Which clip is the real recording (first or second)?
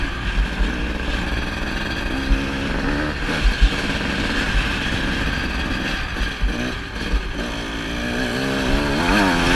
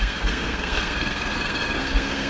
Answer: first